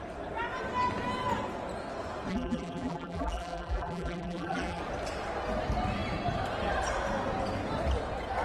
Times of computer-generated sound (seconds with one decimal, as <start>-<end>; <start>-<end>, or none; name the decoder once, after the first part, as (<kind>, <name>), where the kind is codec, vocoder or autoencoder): 2.3-4.8 (vocoder, BigVGAN v2)